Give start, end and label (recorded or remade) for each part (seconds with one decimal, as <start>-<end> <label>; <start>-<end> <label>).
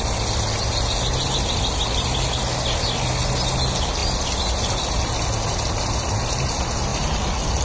0.0-7.6 recorded